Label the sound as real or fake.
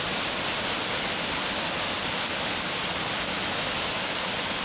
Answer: real